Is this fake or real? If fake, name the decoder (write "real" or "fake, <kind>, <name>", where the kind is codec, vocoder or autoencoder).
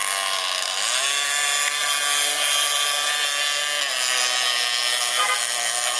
real